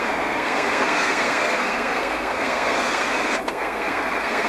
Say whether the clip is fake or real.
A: fake